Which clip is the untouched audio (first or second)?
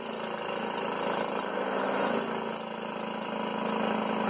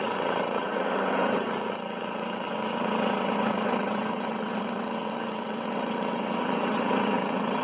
first